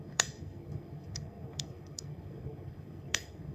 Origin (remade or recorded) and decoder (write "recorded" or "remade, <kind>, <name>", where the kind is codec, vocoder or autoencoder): remade, codec, SNAC